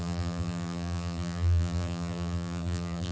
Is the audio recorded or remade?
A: remade